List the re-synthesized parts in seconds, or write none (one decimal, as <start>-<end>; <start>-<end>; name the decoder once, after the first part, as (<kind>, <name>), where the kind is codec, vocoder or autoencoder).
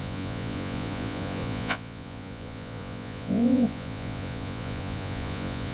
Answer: 0.0-5.7 (vocoder, Vocos)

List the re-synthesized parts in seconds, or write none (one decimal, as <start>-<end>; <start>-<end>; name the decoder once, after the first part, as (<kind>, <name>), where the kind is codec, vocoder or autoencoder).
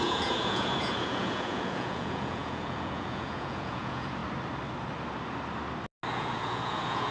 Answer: 0.0-4.2 (vocoder, Vocos); 6.1-7.1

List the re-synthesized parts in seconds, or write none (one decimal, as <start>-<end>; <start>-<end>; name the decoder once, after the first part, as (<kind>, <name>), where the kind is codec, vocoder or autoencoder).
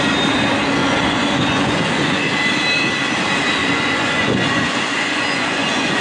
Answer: 0.8-2.3 (vocoder, Vocos); 3.6-6.0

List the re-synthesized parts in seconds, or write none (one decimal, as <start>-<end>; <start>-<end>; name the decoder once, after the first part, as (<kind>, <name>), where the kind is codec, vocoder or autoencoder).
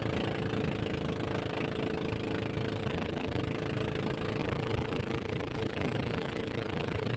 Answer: 2.8-3.4 (vocoder, Vocos); 4.4-7.2